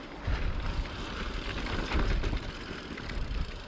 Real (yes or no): yes